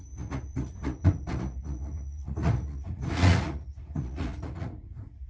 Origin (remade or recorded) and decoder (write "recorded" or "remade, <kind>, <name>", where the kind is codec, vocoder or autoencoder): remade, vocoder, Vocos